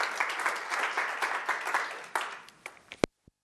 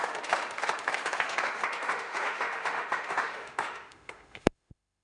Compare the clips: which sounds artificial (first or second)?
second